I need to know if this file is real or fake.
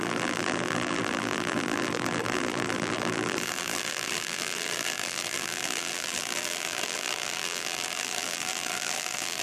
fake